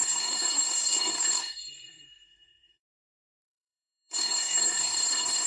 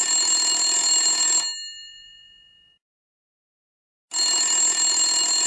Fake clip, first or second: first